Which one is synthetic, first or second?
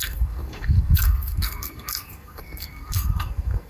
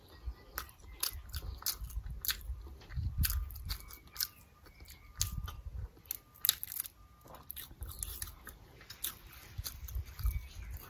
first